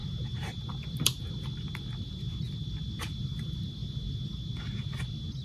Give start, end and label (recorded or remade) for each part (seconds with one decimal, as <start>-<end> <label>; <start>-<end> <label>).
0.0-5.4 recorded